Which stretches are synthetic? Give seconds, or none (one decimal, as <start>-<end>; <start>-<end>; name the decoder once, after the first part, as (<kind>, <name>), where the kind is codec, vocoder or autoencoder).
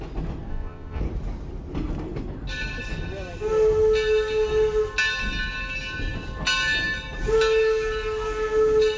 0.5-1.0 (vocoder, Vocos)